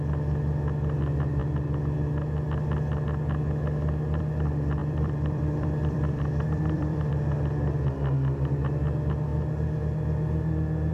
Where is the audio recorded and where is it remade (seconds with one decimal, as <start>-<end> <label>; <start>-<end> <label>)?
0.0-4.8 recorded; 4.8-7.1 remade; 7.1-10.9 recorded